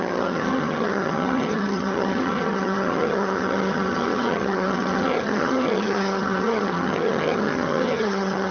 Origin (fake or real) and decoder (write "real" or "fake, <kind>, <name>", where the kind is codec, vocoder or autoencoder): fake, vocoder, HiFi-GAN